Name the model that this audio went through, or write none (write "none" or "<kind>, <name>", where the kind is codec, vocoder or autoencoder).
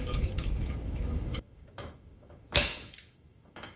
autoencoder, DAC-VAE